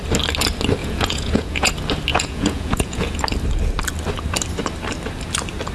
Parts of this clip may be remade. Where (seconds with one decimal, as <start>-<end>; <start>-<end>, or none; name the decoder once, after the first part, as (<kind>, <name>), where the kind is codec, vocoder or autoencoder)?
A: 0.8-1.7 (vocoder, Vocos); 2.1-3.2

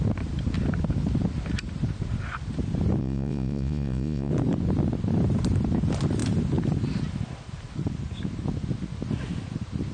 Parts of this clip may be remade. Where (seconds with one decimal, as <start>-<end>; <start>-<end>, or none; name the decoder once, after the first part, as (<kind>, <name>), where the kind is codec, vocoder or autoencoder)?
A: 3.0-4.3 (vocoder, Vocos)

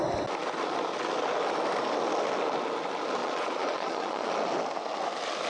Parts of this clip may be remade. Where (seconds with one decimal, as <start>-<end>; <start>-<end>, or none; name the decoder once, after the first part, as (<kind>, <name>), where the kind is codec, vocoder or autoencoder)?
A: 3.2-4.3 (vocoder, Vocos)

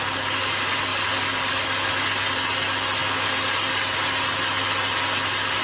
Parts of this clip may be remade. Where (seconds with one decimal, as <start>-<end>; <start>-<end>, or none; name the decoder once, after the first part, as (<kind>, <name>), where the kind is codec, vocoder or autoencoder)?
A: none

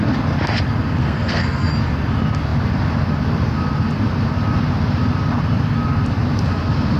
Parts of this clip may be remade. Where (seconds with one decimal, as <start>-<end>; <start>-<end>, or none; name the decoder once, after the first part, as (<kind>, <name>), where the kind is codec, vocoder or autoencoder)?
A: 1.0-1.7 (codec, SNAC)

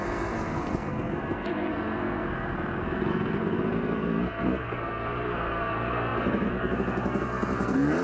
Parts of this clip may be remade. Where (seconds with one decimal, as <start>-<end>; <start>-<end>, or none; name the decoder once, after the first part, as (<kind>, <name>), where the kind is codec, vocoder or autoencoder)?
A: 0.0-8.0 (codec, SNAC)

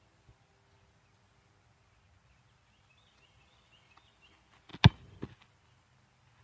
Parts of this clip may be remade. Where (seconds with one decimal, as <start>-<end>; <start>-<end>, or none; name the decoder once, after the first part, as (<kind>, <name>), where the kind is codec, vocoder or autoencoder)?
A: none

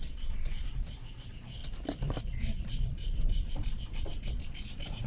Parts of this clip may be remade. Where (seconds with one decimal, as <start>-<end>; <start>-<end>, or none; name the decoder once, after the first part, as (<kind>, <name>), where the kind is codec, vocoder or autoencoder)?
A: 0.0-1.6 (vocoder, Vocos); 2.2-5.1